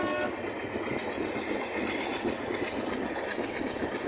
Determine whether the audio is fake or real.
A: real